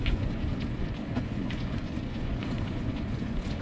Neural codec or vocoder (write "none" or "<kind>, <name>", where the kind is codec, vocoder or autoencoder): vocoder, Vocos